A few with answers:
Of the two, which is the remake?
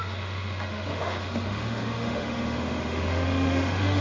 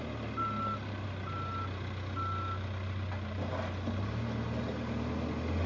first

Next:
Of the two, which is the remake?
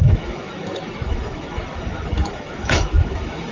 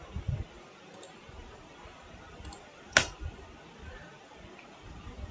first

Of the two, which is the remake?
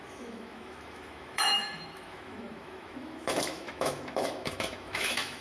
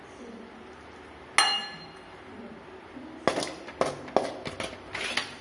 first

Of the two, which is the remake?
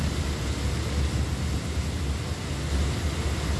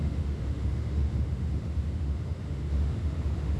second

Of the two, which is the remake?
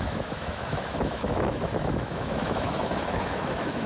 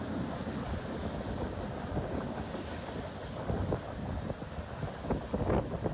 first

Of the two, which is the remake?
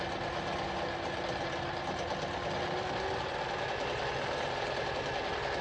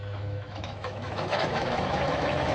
second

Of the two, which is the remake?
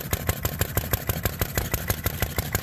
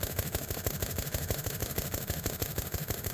second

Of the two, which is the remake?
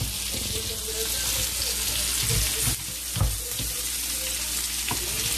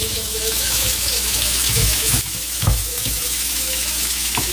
second